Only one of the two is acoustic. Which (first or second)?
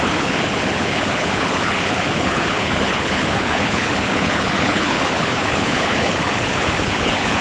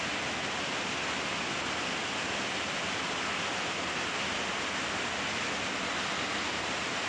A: second